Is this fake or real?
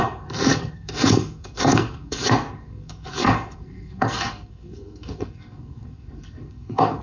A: fake